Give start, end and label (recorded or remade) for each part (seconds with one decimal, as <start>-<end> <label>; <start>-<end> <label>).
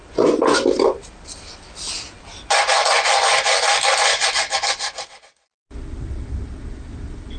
0.0-7.4 recorded